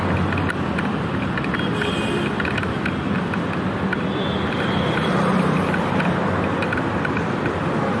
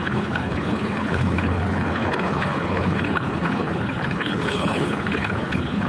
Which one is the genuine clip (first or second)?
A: first